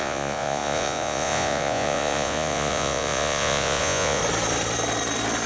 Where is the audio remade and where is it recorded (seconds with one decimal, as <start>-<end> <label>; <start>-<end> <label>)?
0.0-4.2 remade; 4.2-5.5 recorded